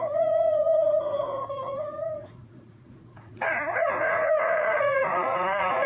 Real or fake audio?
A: fake